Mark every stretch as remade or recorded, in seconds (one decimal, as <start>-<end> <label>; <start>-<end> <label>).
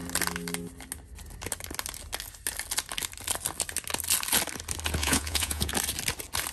0.0-5.0 recorded; 5.0-5.7 remade; 5.7-6.5 recorded